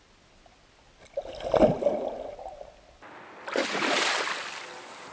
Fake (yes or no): no